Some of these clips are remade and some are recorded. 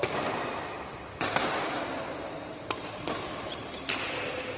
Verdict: recorded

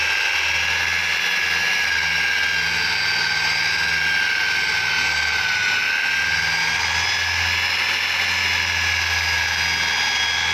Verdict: recorded